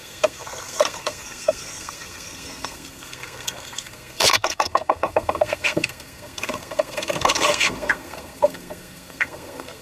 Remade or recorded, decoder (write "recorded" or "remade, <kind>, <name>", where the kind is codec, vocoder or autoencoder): remade, codec, SNAC